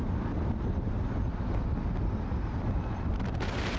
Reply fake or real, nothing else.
real